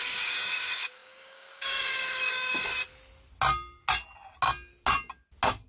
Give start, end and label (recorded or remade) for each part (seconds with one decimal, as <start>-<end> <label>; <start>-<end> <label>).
0.0-2.7 remade; 2.7-5.7 recorded